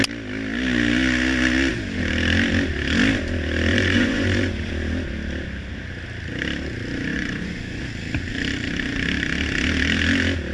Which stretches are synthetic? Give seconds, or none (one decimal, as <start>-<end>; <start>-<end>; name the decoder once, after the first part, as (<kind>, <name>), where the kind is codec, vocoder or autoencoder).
3.7-4.7 (vocoder, Vocos); 7.1-7.8

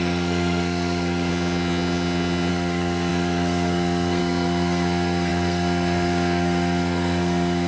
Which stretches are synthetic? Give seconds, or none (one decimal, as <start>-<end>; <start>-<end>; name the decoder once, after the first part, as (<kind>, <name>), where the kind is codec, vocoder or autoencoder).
0.0-1.3 (codec, SNAC); 2.5-7.7

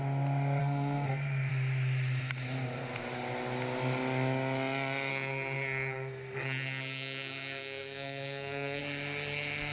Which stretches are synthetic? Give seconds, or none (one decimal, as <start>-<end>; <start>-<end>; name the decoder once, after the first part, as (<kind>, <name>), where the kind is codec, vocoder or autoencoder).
0.6-1.5 (codec, SNAC); 5.1-8.8

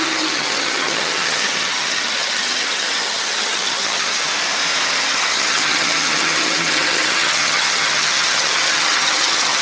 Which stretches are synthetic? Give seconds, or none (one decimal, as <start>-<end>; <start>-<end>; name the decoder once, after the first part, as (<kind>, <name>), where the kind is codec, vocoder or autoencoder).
0.0-4.3 (vocoder, HiFi-GAN); 5.1-9.6